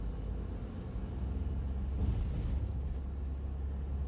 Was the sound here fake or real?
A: real